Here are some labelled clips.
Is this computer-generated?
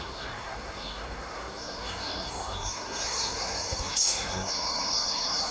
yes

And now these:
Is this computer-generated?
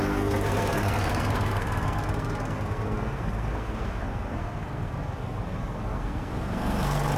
yes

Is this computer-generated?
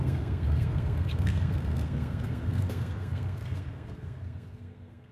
yes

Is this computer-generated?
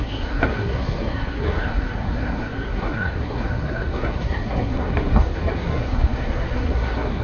yes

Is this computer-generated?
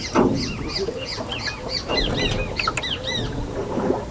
no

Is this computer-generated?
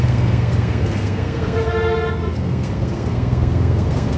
yes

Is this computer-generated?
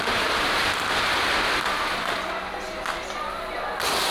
no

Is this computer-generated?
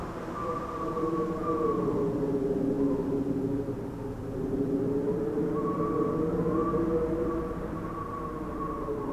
no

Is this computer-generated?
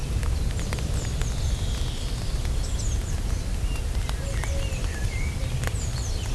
no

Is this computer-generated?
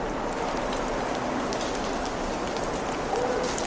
no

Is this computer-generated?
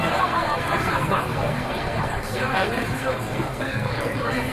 yes